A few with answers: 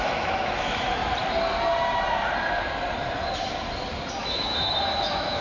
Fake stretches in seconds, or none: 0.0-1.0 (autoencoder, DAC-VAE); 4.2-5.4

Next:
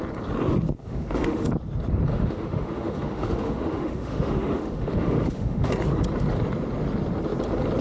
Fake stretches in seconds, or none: 0.8-1.5 (autoencoder, DAC-VAE); 2.1-5.7

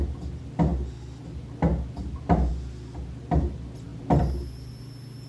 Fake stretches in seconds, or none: none

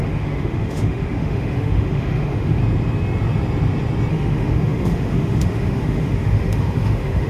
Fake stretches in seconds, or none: 0.0-2.6 (autoencoder, DAC-VAE); 4.1-7.3

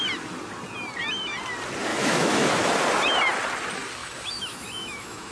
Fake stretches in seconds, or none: 1.9-2.5 (autoencoder, DAC-VAE); 4.0-5.3

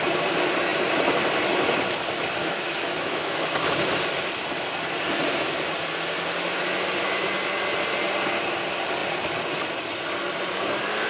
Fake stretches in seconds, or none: 2.4-3.6 (autoencoder, DAC-VAE)

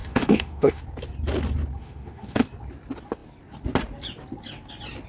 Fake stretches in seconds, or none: 0.0-0.8 (autoencoder, DAC-VAE); 1.8-2.4